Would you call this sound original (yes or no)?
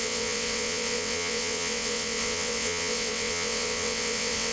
no